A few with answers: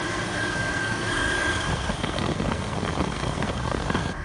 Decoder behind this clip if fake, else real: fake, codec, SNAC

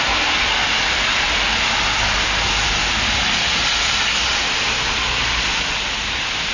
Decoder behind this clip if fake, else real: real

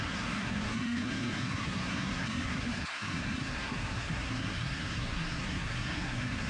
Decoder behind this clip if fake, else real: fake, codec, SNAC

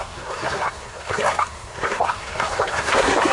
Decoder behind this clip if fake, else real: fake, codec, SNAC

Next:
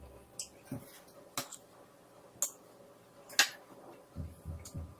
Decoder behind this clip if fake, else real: real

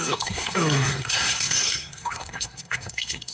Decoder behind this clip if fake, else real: fake, codec, SNAC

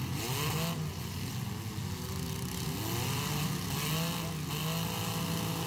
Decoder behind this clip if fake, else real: real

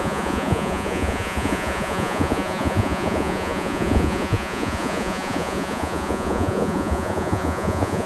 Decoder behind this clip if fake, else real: fake, vocoder, Vocos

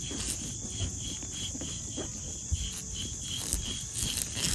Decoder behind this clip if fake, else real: real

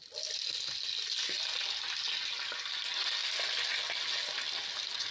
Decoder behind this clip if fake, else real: real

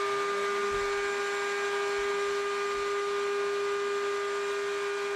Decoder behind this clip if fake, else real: real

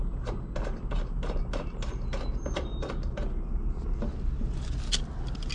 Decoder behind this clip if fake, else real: real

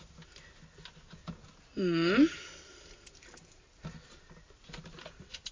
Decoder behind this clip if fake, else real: real